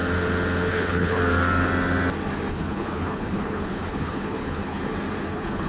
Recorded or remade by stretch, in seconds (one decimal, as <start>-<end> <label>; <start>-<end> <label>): 0.0-0.7 recorded; 0.7-1.2 remade; 1.2-2.5 recorded; 2.5-4.8 remade; 4.8-5.3 recorded; 5.3-5.7 remade